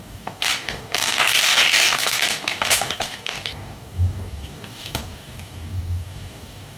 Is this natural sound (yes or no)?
no